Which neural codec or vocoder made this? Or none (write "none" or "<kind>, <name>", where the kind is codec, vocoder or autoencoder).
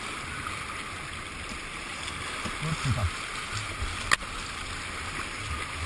none